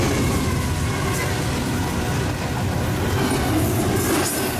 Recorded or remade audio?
recorded